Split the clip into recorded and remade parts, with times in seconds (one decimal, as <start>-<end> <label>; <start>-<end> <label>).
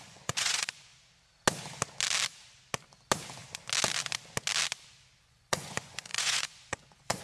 0.0-0.9 remade; 0.9-5.2 recorded; 5.2-7.2 remade